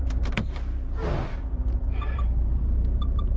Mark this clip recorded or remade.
remade